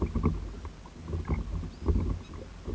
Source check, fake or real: real